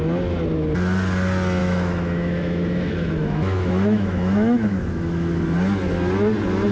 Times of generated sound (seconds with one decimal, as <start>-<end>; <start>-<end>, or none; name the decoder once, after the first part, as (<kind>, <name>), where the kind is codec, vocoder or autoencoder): 1.6-5.4 (autoencoder, DAC-VAE)